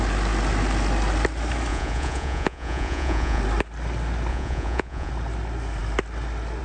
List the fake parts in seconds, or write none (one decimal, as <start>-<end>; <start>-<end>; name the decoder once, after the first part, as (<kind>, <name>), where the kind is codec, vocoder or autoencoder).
1.7-3.4 (vocoder, Vocos); 4.3-5.1

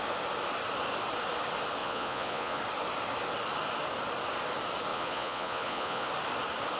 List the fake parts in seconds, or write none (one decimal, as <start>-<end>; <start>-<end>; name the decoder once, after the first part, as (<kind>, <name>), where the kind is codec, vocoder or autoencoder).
1.8-2.6 (vocoder, Vocos); 4.9-6.1

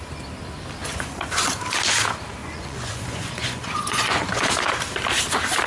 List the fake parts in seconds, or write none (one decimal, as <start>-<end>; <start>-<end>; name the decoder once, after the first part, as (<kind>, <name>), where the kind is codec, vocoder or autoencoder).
0.8-1.6 (vocoder, Vocos); 2.4-4.5

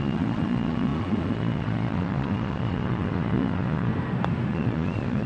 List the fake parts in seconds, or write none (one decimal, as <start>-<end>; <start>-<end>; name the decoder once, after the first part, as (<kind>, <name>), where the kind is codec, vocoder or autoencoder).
0.0-3.9 (vocoder, Vocos); 4.5-5.3

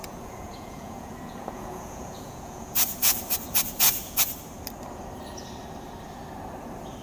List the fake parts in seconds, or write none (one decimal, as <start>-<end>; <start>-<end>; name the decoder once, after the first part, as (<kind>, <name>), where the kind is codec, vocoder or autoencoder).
0.0-4.2 (vocoder, Vocos)